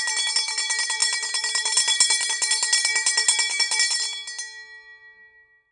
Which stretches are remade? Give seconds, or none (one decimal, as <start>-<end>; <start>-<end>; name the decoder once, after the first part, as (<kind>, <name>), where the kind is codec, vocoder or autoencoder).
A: none